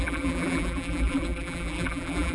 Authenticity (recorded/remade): remade